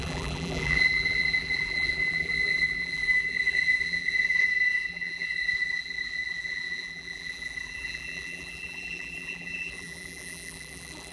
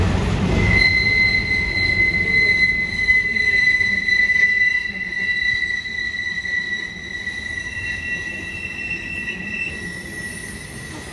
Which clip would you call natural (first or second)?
second